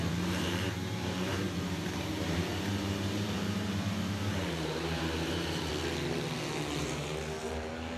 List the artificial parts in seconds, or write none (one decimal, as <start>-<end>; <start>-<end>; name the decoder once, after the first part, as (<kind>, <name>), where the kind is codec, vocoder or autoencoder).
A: 0.0-5.7 (vocoder, BigVGAN v2); 6.8-8.0